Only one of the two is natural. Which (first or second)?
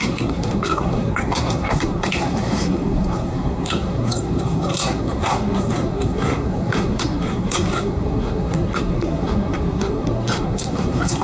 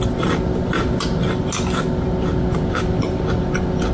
second